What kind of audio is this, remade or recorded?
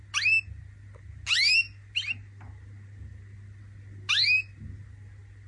recorded